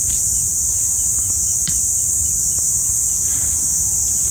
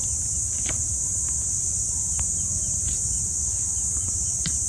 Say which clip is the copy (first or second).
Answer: second